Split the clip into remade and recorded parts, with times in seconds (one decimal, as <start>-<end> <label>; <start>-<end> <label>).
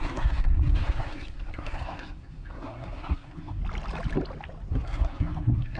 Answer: 0.0-3.6 remade; 3.6-4.7 recorded; 4.7-5.8 remade